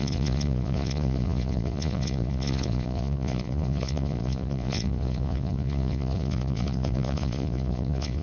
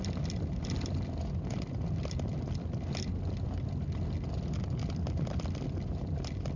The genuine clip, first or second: second